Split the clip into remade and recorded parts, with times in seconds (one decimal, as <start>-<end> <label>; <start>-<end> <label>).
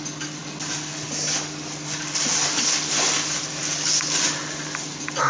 0.0-5.3 recorded